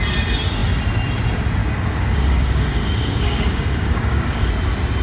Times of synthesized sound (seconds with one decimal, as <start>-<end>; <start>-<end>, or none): 1.6-4.5